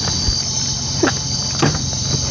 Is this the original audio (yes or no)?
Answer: yes